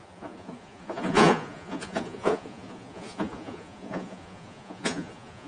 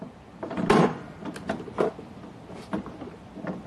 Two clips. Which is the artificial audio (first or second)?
first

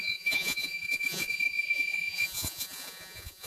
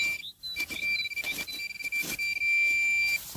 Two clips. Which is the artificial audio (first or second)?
first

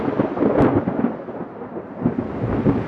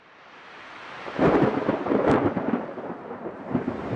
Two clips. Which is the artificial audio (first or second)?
second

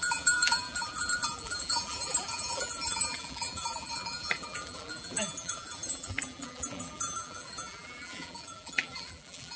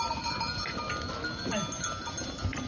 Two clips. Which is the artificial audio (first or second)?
first